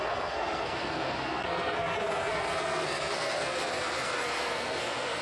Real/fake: fake